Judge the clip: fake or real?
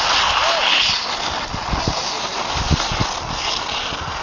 real